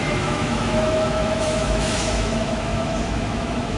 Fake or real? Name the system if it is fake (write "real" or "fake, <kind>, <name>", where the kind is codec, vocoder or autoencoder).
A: fake, autoencoder, DAC-VAE